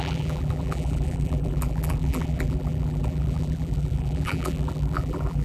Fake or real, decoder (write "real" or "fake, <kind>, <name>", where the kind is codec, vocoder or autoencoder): fake, vocoder, BigVGAN v2